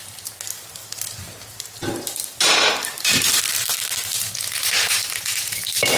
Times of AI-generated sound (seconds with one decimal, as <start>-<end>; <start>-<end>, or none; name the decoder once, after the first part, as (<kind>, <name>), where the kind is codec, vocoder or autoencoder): 0.0-0.8 (vocoder, BigVGAN v2); 2.7-6.0